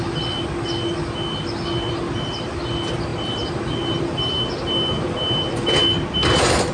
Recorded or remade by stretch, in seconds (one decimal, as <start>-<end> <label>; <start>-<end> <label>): 0.0-6.7 recorded

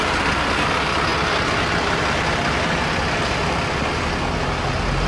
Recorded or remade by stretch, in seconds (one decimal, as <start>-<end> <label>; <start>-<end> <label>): 0.0-5.1 recorded

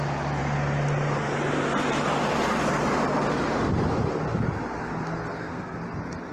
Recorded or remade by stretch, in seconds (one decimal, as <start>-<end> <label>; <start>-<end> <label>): 0.0-5.3 recorded; 5.3-5.8 remade; 5.8-6.3 recorded

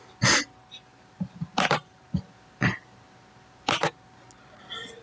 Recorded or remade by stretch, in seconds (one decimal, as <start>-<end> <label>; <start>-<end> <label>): 0.0-0.9 recorded; 0.9-3.9 remade; 3.9-5.0 recorded

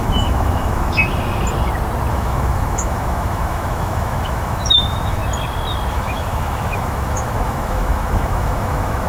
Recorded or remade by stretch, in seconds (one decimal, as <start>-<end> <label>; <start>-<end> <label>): 0.0-1.0 remade; 1.0-2.1 recorded; 2.1-5.2 remade; 5.2-5.9 recorded; 5.9-9.1 remade

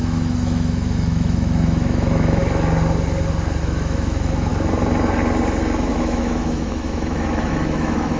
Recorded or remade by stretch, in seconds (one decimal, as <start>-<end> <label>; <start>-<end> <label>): 0.0-2.4 remade; 2.4-3.6 recorded; 3.6-4.5 remade; 4.5-5.9 recorded; 5.9-8.2 remade

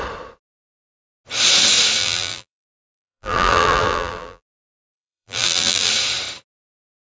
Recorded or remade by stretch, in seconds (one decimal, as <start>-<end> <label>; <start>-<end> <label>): 0.0-2.0 recorded; 2.0-5.9 remade; 5.9-7.1 recorded